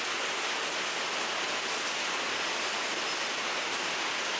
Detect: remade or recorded recorded